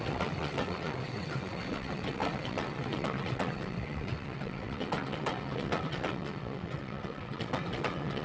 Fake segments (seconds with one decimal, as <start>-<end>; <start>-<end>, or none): 0.0-8.2